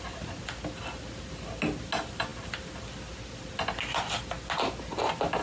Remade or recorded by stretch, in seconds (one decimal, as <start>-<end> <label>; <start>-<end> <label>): 0.0-5.4 recorded